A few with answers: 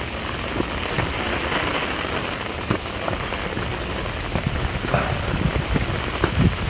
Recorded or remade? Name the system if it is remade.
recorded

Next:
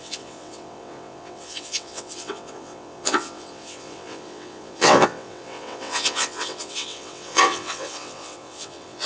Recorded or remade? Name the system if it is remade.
remade, vocoder, WaveNeXt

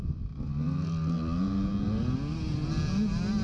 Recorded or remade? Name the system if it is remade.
recorded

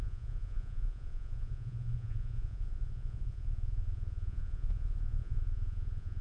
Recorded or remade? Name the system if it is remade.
remade, vocoder, Vocos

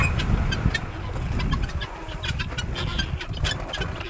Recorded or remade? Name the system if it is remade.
recorded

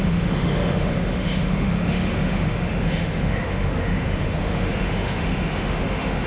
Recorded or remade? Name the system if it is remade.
remade, autoencoder, DAC-VAE